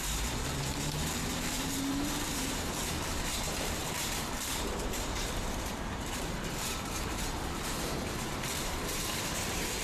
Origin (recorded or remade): remade